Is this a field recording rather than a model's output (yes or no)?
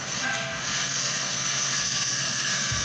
no